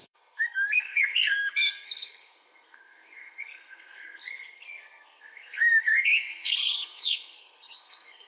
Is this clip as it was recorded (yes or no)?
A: no